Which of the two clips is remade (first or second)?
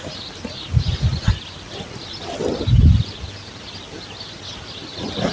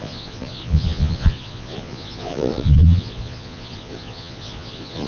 second